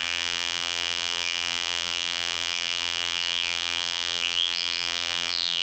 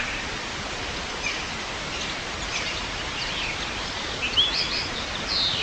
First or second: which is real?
second